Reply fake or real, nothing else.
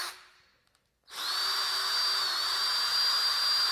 real